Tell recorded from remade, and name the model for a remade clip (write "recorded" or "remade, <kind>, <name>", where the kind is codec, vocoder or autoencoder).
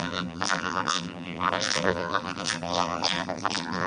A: remade, vocoder, BigVGAN v2